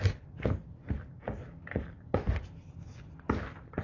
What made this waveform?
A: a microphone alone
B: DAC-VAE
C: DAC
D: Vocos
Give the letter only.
A